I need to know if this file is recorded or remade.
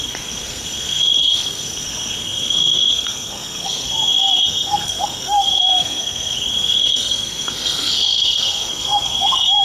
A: remade